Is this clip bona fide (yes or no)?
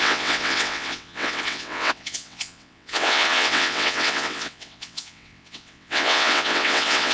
no